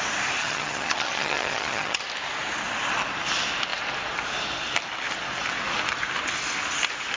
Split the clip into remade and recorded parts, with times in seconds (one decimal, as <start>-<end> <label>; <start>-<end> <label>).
0.0-0.4 recorded; 0.4-2.0 remade; 2.0-7.2 recorded